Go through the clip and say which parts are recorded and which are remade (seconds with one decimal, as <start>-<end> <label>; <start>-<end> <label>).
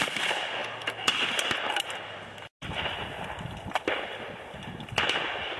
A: 0.0-5.6 recorded